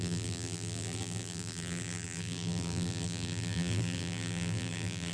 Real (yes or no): no